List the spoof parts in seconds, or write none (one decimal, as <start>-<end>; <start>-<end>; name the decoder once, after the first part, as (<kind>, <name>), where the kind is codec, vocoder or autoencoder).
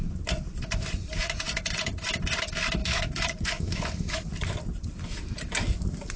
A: 2.8-4.2 (autoencoder, DAC-VAE)